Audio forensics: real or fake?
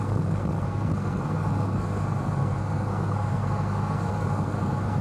fake